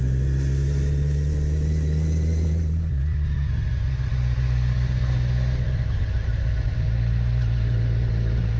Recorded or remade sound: recorded